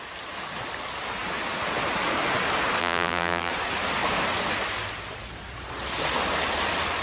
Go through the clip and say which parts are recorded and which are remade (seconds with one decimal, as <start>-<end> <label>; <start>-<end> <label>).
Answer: 0.0-2.8 recorded; 2.8-3.5 remade; 3.5-7.0 recorded